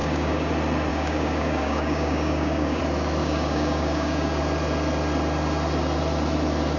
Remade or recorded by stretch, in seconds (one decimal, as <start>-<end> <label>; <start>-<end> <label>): 0.0-0.5 remade; 0.5-0.9 recorded; 0.9-2.8 remade; 2.8-3.2 recorded; 3.2-4.4 remade; 4.4-6.8 recorded